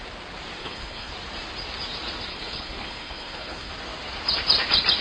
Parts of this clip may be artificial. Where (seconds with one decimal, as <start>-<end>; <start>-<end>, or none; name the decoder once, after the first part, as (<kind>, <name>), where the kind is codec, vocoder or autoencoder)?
0.6-1.1 (codec, HILCodec); 2.3-3.7